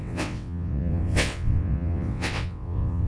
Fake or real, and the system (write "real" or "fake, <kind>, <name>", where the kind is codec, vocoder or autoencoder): fake, vocoder, WaveNeXt